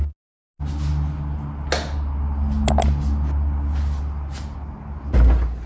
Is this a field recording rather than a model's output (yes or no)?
yes